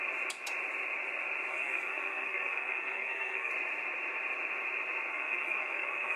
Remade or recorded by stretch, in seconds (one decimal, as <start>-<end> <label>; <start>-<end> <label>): 0.0-1.5 recorded; 1.5-3.5 remade; 3.5-5.1 recorded; 5.1-6.2 remade